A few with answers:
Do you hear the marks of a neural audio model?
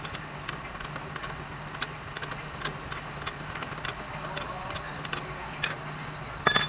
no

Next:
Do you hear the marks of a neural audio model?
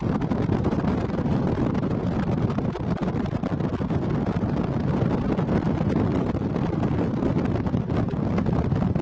no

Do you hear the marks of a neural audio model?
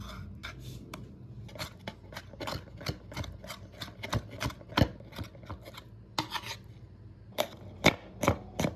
no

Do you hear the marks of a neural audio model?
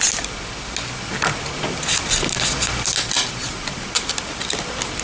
no